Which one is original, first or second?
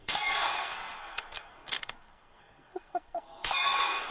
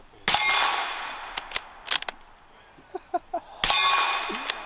second